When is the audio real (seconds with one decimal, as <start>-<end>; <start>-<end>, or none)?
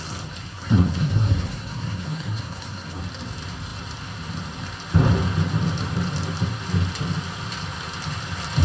0.0-0.5; 3.0-8.6